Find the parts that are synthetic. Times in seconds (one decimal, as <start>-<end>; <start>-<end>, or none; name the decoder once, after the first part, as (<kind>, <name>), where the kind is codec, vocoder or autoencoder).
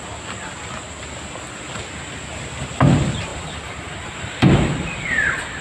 3.3-5.6 (vocoder, BigVGAN v2)